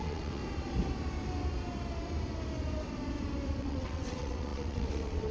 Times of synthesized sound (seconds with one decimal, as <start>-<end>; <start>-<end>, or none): 0.0-0.4; 3.6-5.3